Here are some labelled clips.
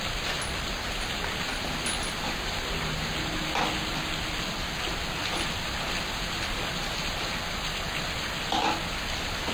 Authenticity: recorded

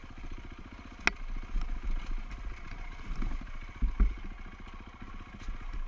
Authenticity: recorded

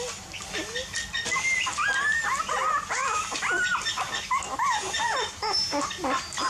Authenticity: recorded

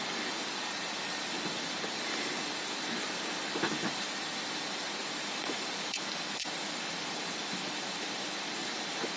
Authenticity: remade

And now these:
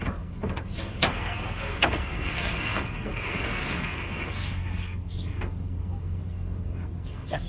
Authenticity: remade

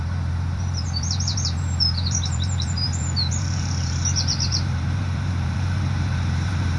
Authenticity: remade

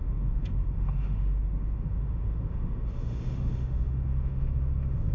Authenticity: remade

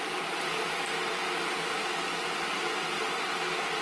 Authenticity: recorded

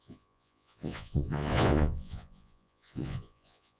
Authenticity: remade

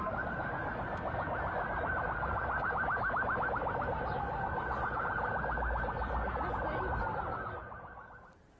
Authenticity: recorded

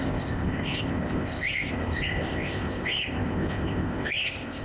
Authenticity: remade